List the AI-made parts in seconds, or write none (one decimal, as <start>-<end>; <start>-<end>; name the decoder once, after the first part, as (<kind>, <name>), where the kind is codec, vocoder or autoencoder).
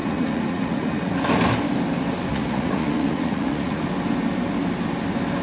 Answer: 0.0-1.1 (vocoder, Vocos); 2.3-3.8